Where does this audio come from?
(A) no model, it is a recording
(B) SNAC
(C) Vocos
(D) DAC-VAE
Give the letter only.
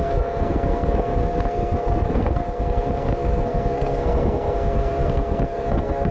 B